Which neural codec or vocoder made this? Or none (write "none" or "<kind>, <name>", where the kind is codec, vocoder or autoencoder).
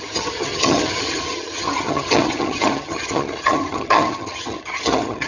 vocoder, HiFi-GAN